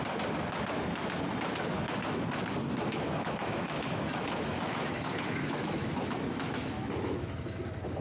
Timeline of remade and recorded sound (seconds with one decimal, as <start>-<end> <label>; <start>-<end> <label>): 0.0-2.9 recorded; 2.9-7.6 remade; 7.6-8.0 recorded